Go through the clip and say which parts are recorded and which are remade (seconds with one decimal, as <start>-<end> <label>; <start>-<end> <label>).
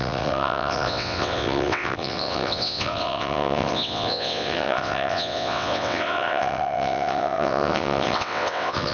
0.0-8.9 remade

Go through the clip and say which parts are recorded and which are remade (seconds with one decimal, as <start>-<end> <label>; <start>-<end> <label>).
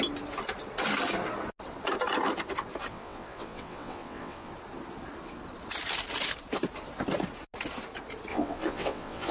0.0-2.9 recorded; 2.9-4.5 remade; 4.5-8.3 recorded; 8.3-9.3 remade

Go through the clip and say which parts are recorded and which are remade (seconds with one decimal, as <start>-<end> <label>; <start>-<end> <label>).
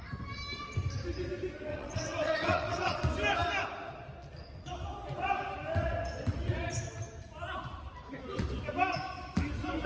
0.0-1.7 recorded; 1.7-3.0 remade; 3.0-9.9 recorded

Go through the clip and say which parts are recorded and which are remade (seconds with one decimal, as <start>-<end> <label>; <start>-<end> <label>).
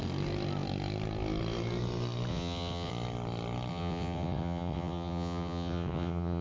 0.0-2.3 recorded; 2.3-2.9 remade; 2.9-3.7 recorded; 3.7-6.4 remade